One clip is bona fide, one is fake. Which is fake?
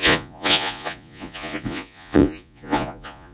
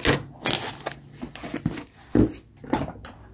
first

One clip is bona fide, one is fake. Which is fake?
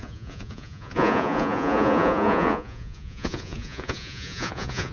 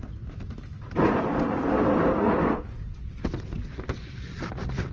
first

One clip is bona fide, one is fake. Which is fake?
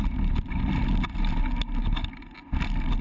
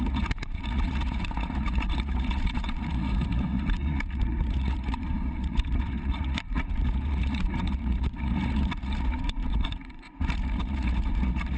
second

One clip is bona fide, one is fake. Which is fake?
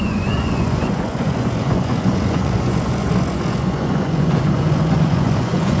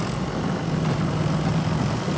first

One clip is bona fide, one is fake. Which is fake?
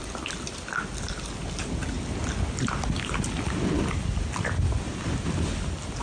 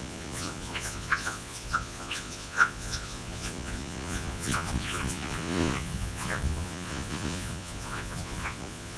second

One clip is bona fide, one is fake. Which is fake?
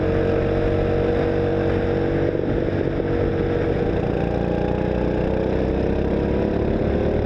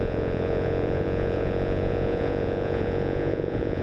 second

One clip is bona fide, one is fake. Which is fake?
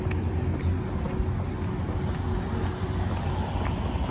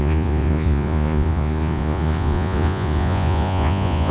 second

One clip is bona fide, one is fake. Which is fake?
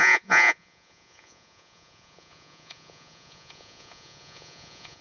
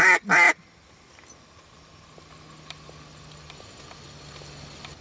first